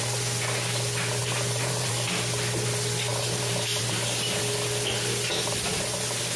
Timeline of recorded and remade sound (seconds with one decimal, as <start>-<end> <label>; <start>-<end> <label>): 0.0-1.2 recorded; 1.2-1.9 remade; 1.9-3.1 recorded; 3.1-4.4 remade; 4.4-6.4 recorded